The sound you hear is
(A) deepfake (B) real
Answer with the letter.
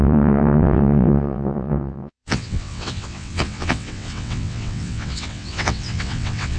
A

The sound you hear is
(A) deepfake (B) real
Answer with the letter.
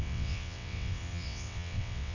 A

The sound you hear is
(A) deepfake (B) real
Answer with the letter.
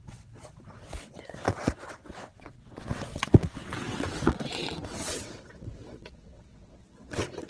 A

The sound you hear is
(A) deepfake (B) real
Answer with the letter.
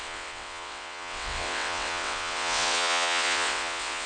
A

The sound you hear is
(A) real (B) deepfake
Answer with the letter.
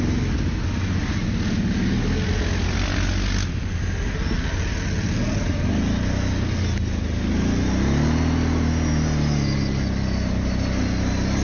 A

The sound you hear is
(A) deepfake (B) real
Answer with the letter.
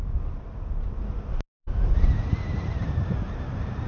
B